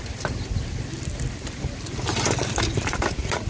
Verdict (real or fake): real